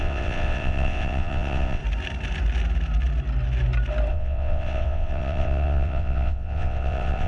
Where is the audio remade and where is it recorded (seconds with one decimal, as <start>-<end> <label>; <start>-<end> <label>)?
0.0-1.8 remade; 1.8-4.1 recorded; 4.1-7.3 remade